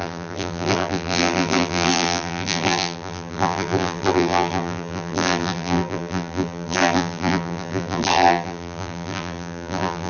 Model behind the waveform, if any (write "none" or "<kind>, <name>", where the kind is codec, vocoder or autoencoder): vocoder, BigVGAN v2